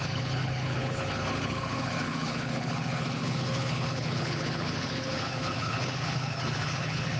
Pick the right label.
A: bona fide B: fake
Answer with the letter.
B